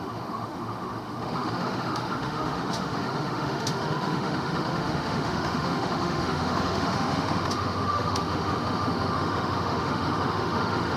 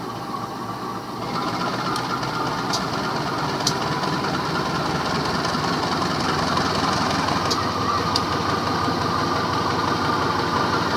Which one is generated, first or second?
first